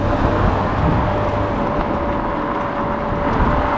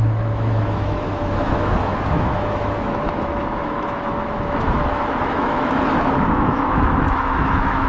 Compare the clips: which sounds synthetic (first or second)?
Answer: second